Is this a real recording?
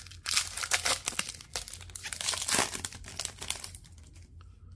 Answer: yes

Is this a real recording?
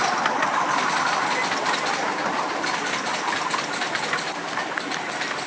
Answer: yes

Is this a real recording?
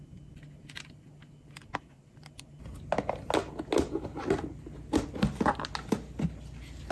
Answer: yes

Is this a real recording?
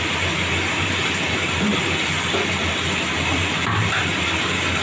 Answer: yes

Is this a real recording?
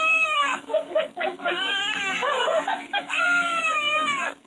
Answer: no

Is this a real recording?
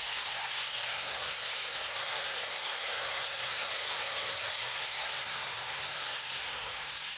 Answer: no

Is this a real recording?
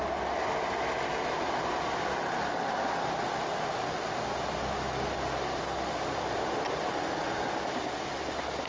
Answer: yes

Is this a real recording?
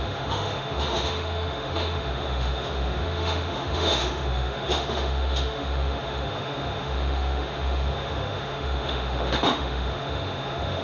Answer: no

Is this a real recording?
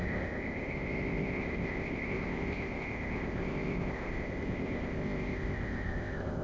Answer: no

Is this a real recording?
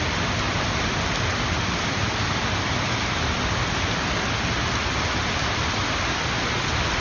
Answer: yes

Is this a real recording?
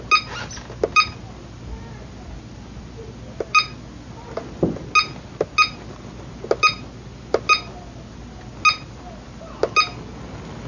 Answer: yes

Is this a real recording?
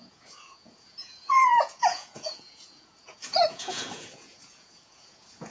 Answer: no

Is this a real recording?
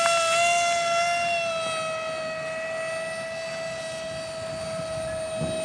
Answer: yes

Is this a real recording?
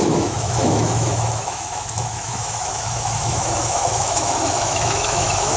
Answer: no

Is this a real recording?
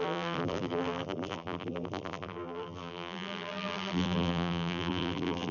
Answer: no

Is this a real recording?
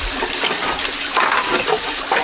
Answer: yes